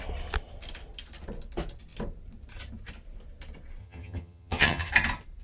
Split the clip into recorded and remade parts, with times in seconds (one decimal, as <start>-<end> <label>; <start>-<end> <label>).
0.0-3.8 recorded; 3.8-4.9 remade; 4.9-5.4 recorded